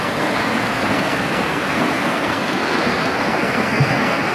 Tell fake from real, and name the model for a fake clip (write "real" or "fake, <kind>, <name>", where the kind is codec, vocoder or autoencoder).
fake, codec, SNAC